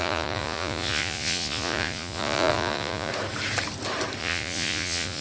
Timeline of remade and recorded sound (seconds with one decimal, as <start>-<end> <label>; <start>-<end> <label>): 0.0-3.1 remade; 3.1-4.2 recorded; 4.2-5.2 remade